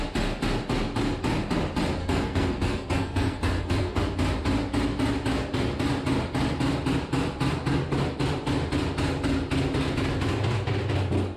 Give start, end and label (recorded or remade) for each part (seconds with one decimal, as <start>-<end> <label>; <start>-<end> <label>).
0.0-2.0 recorded; 2.0-4.0 remade; 4.0-11.4 recorded